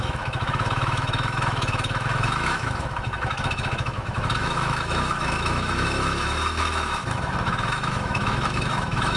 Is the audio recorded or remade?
remade